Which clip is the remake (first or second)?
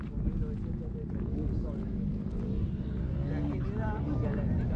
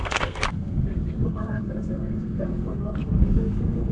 second